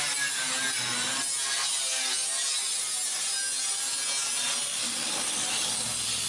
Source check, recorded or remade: recorded